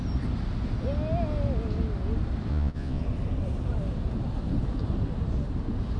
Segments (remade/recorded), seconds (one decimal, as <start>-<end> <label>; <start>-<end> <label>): 0.0-2.5 recorded; 2.5-3.0 remade; 3.0-6.0 recorded